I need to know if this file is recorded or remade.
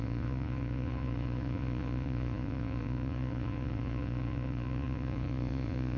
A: remade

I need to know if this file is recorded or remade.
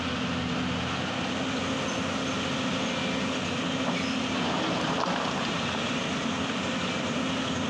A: recorded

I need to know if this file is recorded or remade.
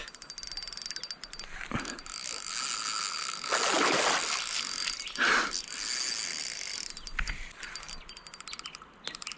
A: recorded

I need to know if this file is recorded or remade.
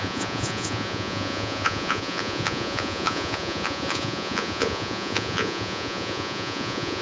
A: remade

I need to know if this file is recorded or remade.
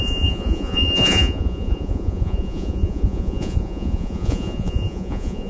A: remade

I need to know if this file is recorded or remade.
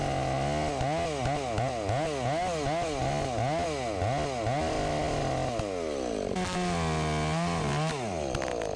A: recorded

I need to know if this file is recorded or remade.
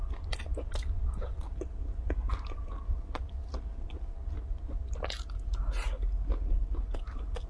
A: recorded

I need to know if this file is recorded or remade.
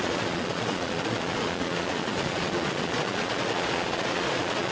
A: remade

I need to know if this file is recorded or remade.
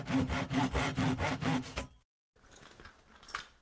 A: recorded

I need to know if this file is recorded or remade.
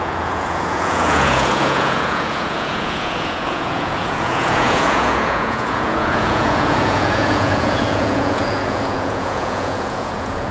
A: remade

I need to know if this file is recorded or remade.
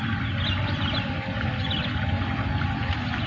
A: recorded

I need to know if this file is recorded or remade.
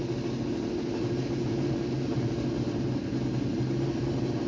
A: recorded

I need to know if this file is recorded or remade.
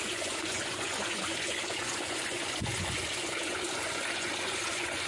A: remade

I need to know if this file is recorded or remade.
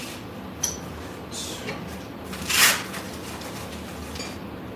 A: recorded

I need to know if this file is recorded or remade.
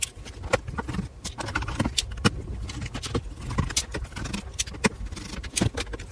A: recorded